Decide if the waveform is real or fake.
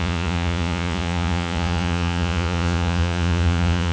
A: fake